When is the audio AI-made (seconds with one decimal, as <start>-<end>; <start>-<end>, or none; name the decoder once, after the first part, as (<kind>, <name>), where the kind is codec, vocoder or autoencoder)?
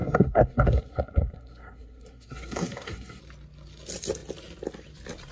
0.0-3.2 (codec, SNAC)